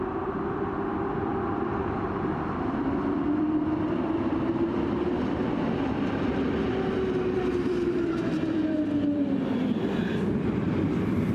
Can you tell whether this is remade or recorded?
remade